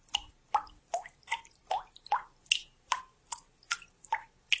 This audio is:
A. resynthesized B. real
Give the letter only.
B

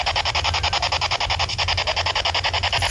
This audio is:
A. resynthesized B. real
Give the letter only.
B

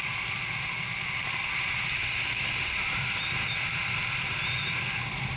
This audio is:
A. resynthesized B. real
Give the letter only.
B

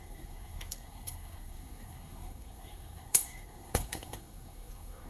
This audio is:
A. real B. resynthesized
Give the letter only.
B